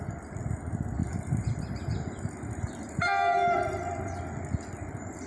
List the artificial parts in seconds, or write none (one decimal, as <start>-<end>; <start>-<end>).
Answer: 1.0-4.2